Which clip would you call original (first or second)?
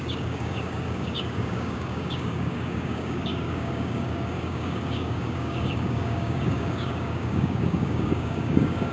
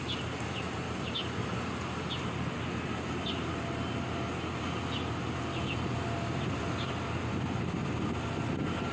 second